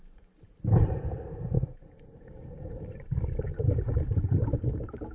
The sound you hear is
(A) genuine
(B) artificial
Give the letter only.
B